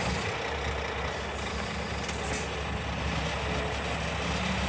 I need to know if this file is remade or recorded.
recorded